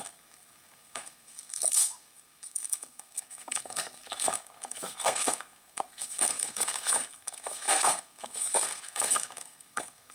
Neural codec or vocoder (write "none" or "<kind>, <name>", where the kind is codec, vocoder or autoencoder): codec, SNAC